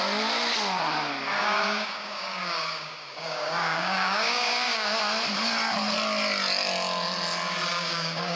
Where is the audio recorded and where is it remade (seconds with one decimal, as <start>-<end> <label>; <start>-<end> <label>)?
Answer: 0.0-1.4 recorded; 1.4-5.0 remade; 5.0-7.7 recorded; 7.7-8.4 remade